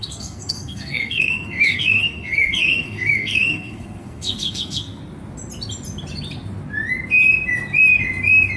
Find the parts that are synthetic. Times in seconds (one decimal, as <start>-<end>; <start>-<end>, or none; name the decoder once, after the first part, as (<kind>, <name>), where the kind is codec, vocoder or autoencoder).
0.0-5.0 (codec, SNAC)